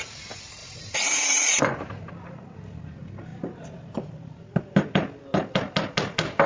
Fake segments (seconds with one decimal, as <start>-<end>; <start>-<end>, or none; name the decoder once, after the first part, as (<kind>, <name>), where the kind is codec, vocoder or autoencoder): 0.6-2.1 (vocoder, BigVGAN v2); 3.3-4.4